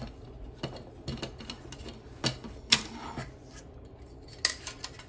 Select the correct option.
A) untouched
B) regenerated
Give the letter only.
A